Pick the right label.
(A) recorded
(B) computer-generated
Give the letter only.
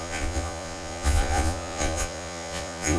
B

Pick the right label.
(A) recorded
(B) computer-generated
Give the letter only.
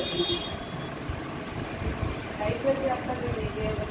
A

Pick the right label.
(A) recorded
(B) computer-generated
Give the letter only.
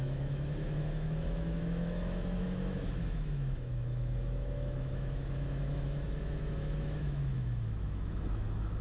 B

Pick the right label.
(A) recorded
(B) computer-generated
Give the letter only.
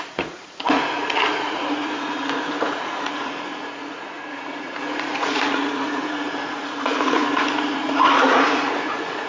B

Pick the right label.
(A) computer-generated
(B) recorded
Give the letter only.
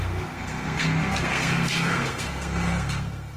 A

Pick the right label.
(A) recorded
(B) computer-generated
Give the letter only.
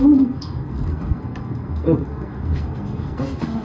B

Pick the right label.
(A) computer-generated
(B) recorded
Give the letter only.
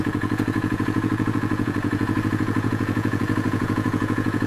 A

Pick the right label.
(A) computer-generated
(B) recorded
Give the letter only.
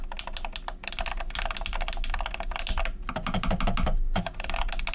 B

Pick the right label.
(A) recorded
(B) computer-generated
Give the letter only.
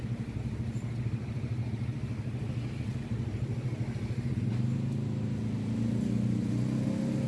A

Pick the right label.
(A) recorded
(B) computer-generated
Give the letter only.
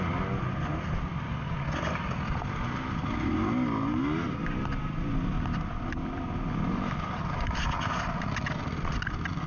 A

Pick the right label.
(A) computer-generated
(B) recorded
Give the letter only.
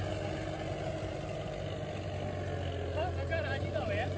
B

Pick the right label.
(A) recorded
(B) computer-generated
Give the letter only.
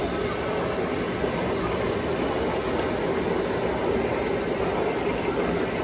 A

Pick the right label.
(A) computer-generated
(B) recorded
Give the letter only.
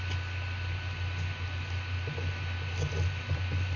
B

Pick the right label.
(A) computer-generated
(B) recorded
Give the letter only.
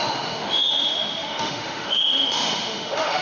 A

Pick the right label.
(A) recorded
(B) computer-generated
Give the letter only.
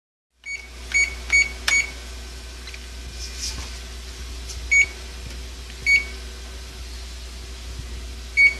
A